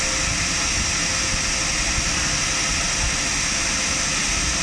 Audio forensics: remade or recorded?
recorded